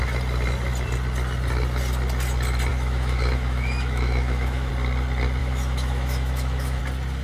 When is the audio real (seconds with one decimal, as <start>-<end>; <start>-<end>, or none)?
0.0-2.7; 4.7-5.4; 6.8-7.2